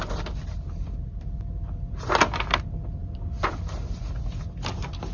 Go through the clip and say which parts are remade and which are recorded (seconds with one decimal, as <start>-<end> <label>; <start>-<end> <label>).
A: 0.0-5.1 recorded